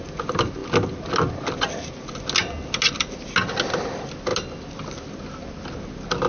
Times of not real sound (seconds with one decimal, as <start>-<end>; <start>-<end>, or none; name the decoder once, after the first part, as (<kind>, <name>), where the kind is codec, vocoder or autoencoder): none